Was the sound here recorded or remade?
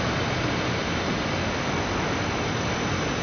recorded